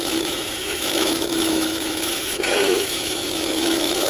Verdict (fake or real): fake